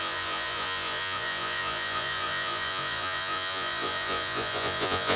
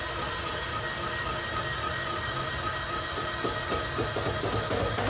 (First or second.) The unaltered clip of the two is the second